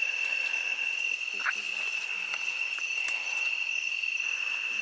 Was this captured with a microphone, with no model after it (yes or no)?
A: yes